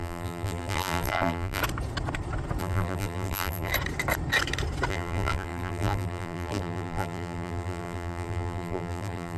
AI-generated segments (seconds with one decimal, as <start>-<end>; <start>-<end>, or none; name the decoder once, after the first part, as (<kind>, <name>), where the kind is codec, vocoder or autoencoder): 0.0-1.6 (vocoder, BigVGAN v2); 2.6-3.7; 4.9-9.4